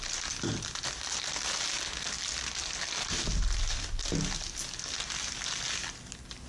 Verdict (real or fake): real